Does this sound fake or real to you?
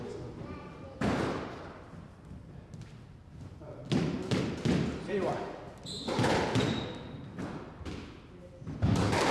real